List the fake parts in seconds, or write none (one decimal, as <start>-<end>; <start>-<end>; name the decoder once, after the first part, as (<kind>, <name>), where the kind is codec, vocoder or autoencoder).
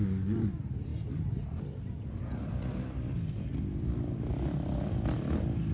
none